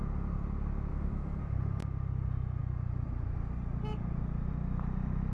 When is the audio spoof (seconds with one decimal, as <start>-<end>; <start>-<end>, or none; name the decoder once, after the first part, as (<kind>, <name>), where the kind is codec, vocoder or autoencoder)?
0.9-1.4 (autoencoder, DAC-VAE)